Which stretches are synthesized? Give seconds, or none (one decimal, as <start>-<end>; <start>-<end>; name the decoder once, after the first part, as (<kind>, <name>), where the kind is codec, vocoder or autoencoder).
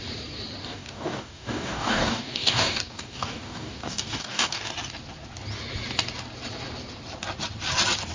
0.6-4.7 (codec, DAC)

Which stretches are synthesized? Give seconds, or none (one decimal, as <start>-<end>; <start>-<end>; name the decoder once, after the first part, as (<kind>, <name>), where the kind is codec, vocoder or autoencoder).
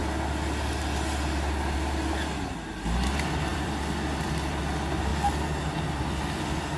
3.5-4.6 (vocoder, BigVGAN v2)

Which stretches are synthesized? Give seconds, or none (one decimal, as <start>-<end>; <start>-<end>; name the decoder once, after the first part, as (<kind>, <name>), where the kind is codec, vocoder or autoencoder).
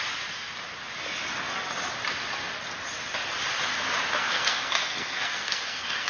4.2-6.1 (codec, SNAC)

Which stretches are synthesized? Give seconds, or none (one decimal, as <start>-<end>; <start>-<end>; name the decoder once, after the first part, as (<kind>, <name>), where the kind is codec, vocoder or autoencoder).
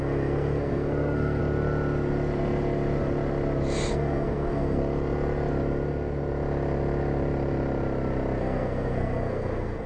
0.0-1.4 (codec, SNAC); 3.9-4.8; 8.4-9.9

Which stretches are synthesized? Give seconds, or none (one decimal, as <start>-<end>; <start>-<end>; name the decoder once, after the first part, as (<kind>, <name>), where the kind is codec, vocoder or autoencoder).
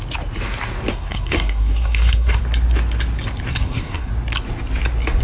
0.9-2.4 (codec, SNAC); 3.5-4.1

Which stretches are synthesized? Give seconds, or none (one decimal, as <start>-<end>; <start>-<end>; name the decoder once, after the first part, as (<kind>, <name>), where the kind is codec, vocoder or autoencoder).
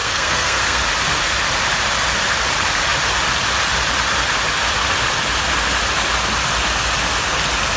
0.0-0.8 (codec, SNAC)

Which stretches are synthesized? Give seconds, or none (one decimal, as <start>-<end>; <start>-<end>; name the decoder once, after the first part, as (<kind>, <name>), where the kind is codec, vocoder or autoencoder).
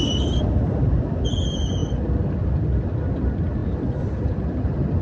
none